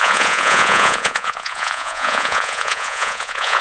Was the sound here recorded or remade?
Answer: remade